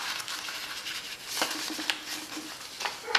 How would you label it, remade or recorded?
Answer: recorded